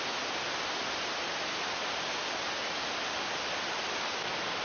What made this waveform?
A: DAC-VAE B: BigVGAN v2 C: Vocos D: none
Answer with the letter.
D